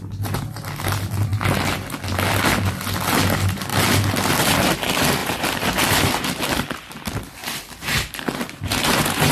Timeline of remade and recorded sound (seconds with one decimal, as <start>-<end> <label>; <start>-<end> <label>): 0.0-5.2 recorded; 5.2-6.4 remade; 6.4-7.4 recorded; 7.4-9.3 remade